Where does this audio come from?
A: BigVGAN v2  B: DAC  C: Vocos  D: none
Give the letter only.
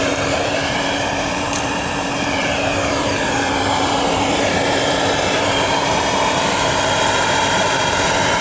A